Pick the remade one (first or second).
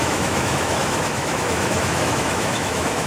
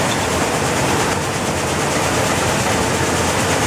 first